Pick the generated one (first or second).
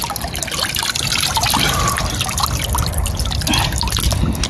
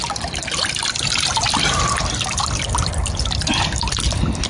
second